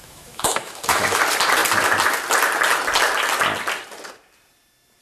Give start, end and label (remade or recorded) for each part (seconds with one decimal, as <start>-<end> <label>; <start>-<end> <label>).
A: 0.0-1.2 remade; 1.2-5.0 recorded